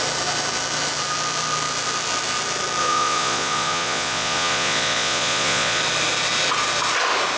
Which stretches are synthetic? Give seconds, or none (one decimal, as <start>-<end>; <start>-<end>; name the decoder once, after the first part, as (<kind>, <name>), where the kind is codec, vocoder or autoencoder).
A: 2.8-5.8 (vocoder, Vocos)

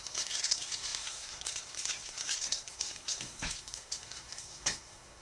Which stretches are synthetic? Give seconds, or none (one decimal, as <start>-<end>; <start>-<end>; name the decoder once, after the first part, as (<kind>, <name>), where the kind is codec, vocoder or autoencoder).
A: 0.0-5.2 (codec, SNAC)

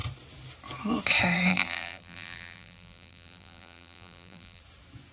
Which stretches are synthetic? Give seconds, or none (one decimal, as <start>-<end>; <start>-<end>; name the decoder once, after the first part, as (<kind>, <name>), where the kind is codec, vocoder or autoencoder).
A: 1.5-4.6 (vocoder, BigVGAN v2)

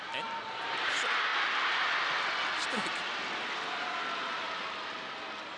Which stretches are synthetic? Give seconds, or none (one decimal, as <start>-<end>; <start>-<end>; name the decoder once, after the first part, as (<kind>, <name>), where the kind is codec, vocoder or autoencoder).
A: none